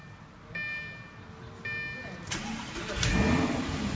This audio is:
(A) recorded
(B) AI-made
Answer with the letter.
A